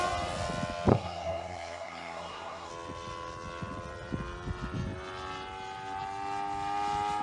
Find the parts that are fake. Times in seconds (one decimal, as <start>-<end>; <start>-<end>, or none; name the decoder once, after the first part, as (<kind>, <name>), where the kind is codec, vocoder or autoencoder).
0.9-2.7 (codec, SNAC)